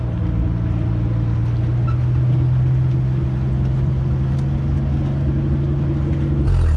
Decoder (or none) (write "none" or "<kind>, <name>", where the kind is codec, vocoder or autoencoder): none